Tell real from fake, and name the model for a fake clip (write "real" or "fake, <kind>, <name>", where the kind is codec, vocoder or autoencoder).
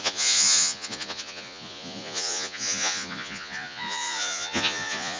fake, vocoder, Vocos